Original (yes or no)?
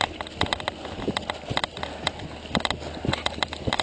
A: yes